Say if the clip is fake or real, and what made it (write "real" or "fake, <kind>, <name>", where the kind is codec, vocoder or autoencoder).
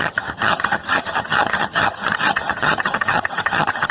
fake, vocoder, HiFi-GAN